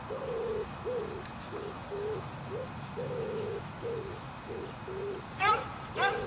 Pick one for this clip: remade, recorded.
recorded